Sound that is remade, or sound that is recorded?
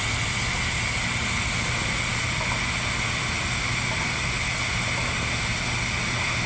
recorded